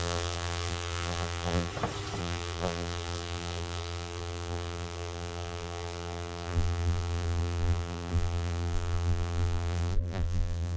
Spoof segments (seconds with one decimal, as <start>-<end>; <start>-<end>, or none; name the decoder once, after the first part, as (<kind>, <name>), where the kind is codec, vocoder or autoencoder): 0.0-1.7 (vocoder, BigVGAN v2); 2.2-10.8